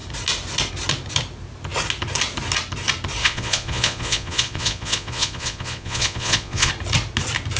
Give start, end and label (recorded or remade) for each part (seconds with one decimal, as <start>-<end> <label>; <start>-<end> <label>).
0.0-3.2 recorded; 3.2-6.7 remade; 6.7-7.6 recorded